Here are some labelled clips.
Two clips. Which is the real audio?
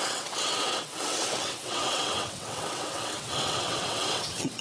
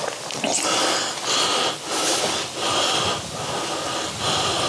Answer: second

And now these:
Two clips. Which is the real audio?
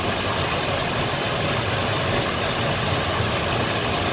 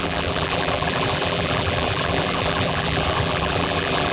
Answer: first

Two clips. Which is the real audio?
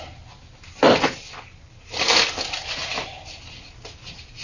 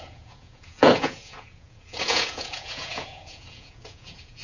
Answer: first